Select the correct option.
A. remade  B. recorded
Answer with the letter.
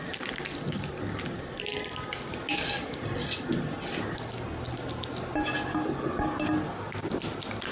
B